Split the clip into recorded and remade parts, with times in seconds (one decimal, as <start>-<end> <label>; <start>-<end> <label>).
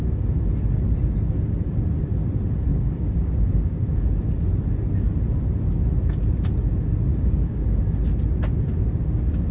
0.0-2.7 recorded; 2.7-3.9 remade; 3.9-7.1 recorded; 7.1-7.8 remade; 7.8-9.5 recorded